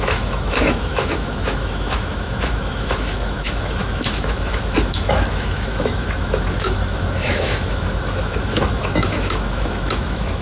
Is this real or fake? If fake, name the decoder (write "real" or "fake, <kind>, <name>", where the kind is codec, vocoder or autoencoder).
fake, autoencoder, DAC-VAE